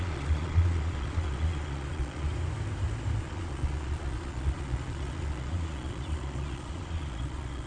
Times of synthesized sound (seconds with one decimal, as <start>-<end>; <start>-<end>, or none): 0.0-2.3; 3.2-7.7